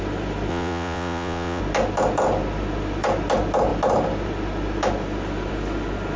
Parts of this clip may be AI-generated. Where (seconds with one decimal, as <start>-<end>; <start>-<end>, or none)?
0.5-1.6